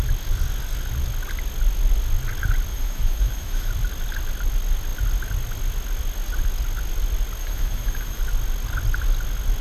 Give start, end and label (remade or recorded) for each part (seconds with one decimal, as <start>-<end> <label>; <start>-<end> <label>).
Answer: 0.0-2.7 recorded; 2.7-3.7 remade; 3.7-7.4 recorded; 7.4-8.2 remade; 8.2-9.6 recorded